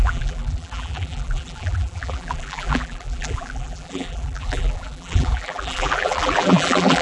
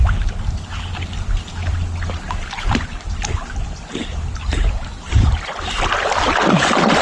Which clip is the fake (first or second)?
first